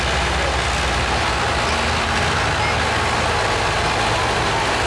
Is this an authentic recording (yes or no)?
yes